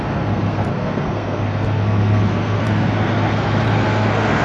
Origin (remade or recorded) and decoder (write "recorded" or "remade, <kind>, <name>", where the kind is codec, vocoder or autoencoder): remade, codec, SNAC